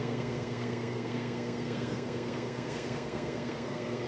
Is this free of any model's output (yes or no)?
no